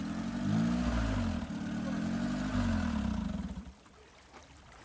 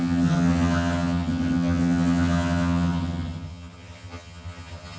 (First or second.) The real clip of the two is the first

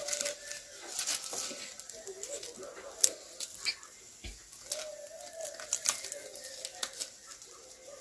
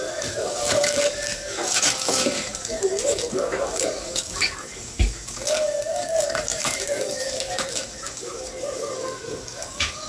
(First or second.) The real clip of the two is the first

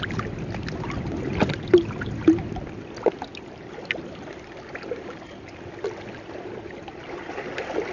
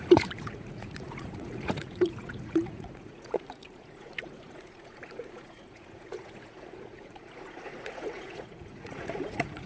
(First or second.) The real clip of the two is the first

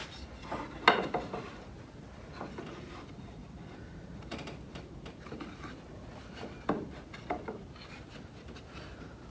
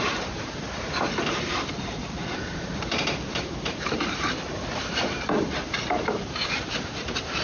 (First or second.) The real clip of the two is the first